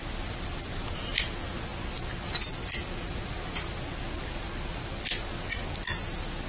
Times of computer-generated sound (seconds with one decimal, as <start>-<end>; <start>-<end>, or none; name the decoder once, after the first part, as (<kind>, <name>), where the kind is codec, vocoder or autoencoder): none

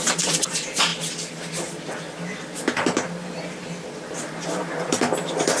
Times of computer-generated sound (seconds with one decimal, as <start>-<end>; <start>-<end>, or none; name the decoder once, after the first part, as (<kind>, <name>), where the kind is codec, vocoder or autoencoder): 0.0-0.9 (vocoder, BigVGAN v2); 4.3-5.6